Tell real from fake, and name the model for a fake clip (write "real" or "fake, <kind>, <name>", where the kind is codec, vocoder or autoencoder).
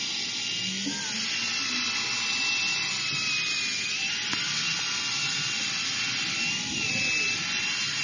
real